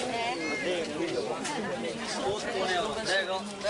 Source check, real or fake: real